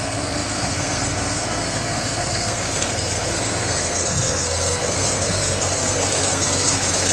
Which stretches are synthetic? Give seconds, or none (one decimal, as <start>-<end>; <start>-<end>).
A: 0.0-7.1